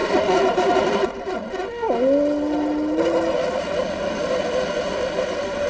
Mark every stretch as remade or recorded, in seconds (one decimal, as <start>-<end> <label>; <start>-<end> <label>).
0.0-1.7 remade; 1.7-5.7 recorded